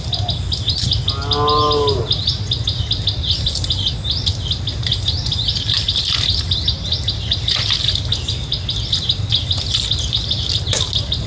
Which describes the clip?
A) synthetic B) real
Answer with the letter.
B